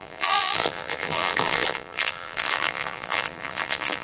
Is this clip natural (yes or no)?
no